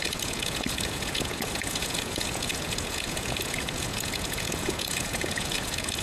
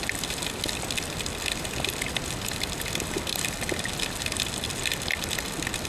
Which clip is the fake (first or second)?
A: first